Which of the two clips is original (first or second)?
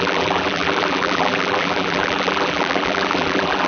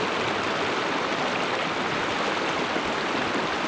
second